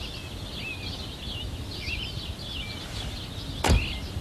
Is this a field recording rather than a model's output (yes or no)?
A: yes